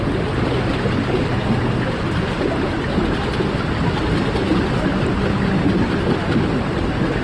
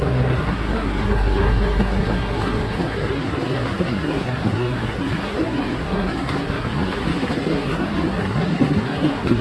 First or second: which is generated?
second